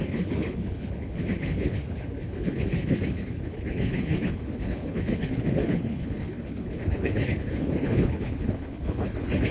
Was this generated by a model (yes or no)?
yes